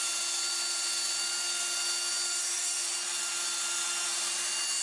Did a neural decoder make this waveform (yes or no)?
no